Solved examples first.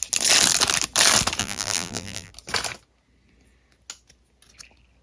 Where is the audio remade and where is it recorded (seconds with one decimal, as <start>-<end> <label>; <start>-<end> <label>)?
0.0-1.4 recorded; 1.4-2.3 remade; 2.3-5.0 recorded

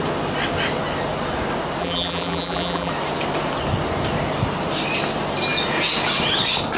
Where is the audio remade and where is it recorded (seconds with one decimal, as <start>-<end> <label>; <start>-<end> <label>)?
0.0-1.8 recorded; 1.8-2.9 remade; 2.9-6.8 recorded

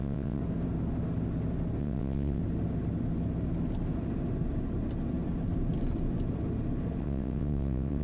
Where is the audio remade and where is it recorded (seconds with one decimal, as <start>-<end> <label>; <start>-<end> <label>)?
0.0-0.4 remade; 0.4-1.8 recorded; 1.8-2.4 remade; 2.4-7.0 recorded; 7.0-8.0 remade

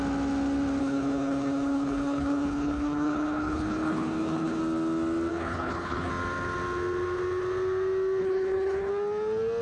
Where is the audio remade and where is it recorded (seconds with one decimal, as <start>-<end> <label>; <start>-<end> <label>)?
0.0-0.8 recorded; 0.8-4.6 remade; 4.6-5.3 recorded; 5.3-6.1 remade; 6.1-8.2 recorded; 8.2-8.9 remade; 8.9-9.6 recorded

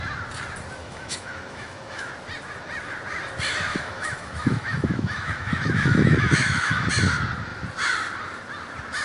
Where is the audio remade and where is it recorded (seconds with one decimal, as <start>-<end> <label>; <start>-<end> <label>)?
0.0-0.8 recorded; 0.8-2.1 remade; 2.1-3.7 recorded; 3.7-6.9 remade; 6.9-9.0 recorded